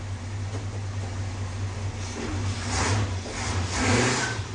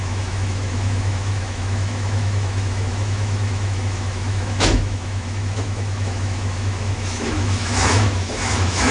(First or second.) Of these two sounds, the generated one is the second